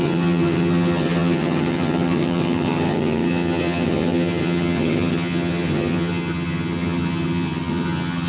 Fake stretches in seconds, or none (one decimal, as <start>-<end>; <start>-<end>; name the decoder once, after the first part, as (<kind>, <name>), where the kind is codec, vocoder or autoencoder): 0.0-8.3 (vocoder, HiFi-GAN)